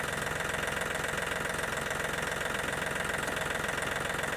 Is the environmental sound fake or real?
real